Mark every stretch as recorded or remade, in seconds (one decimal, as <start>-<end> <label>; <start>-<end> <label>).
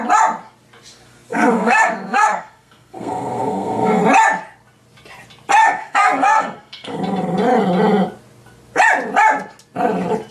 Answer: 0.0-1.3 recorded; 1.3-4.0 remade; 4.0-5.6 recorded; 5.6-7.0 remade; 7.0-10.3 recorded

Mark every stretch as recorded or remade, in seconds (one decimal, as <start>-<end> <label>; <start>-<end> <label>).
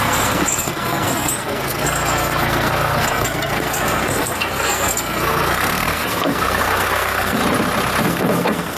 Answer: 0.0-7.4 remade; 7.4-8.0 recorded; 8.0-8.8 remade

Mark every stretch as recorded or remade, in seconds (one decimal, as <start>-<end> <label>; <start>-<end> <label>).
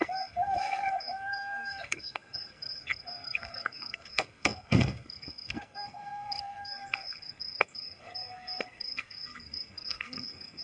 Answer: 0.0-10.6 remade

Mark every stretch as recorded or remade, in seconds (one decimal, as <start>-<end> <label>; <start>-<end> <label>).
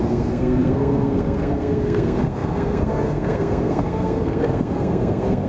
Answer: 0.0-5.5 remade